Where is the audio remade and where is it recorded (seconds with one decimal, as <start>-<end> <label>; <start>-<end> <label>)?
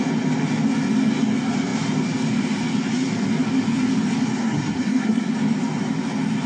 0.0-4.4 recorded; 4.4-5.3 remade; 5.3-6.5 recorded